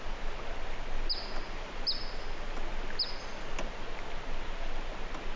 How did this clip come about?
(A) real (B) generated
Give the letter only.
A